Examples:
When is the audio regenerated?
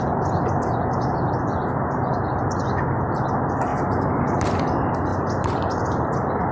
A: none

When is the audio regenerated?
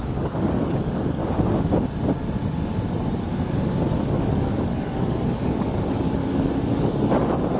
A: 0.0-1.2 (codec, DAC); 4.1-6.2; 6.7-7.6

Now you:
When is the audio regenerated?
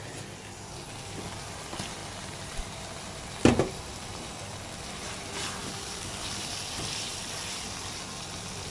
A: 5.6-6.5 (codec, DAC)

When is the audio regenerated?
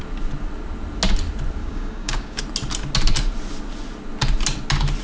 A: 1.6-2.4 (codec, DAC)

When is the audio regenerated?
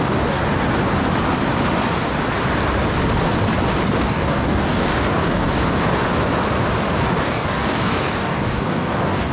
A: 0.0-0.4 (codec, DAC); 4.0-5.6; 7.2-9.3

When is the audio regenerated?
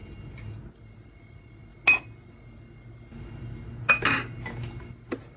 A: none